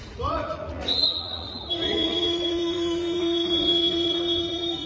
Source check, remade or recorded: remade